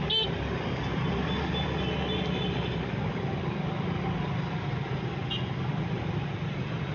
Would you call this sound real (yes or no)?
yes